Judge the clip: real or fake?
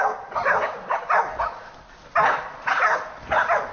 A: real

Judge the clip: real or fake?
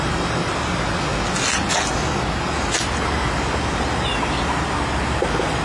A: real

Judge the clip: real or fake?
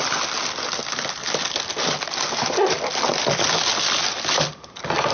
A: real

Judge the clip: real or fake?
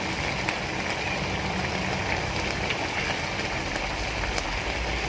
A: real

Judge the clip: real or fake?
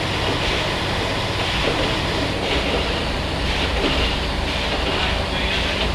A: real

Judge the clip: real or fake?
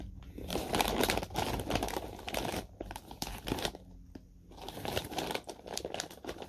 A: real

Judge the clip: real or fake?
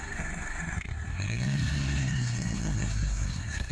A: fake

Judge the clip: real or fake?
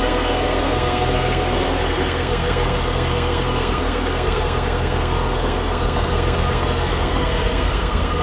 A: fake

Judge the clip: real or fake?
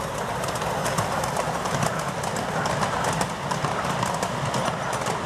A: real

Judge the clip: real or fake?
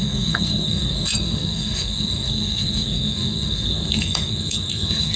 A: fake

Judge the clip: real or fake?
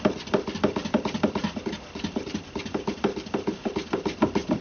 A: real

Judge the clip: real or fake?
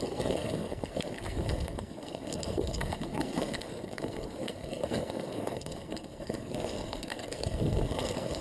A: fake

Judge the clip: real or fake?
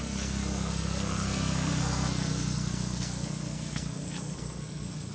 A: fake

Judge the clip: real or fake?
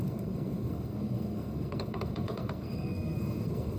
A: fake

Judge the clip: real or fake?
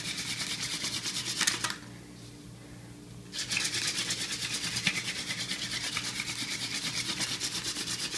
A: real